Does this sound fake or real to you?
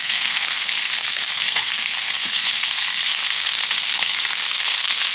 fake